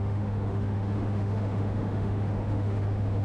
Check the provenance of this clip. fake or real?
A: fake